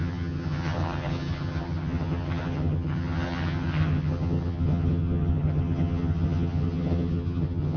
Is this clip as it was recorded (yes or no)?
no